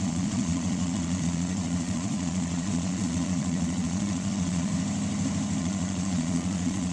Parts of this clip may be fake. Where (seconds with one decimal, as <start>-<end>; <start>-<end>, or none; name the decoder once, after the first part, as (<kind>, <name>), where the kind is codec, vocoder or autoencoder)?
0.0-4.7 (vocoder, Vocos); 5.6-6.9